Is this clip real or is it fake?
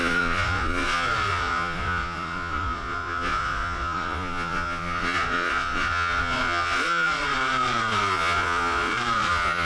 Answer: fake